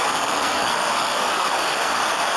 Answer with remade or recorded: remade